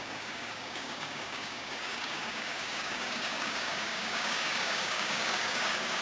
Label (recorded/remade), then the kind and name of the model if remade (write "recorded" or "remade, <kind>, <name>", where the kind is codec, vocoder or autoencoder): remade, codec, DAC